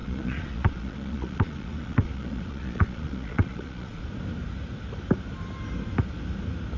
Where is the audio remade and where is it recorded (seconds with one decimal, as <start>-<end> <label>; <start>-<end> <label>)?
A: 0.0-4.0 remade; 4.0-6.8 recorded